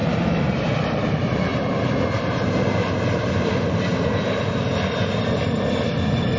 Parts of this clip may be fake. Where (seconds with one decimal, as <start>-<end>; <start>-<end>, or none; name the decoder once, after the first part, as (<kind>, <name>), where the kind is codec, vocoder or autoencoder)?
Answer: 0.0-1.5 (vocoder, BigVGAN v2); 2.2-6.4